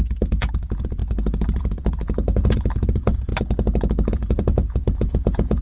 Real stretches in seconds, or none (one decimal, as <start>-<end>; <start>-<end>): 1.0-2.5; 3.3-4.1